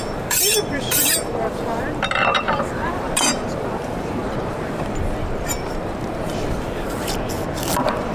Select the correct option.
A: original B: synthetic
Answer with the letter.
B